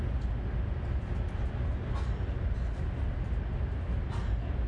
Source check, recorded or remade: recorded